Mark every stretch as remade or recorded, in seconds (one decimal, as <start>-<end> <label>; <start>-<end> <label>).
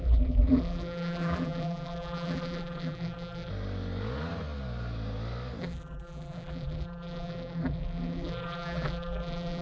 0.0-3.5 remade; 3.5-5.6 recorded; 5.6-9.6 remade